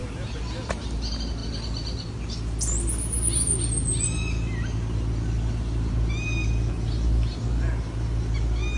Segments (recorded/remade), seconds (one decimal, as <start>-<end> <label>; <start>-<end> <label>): 0.0-8.8 recorded